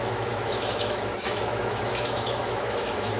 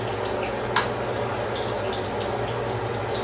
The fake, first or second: first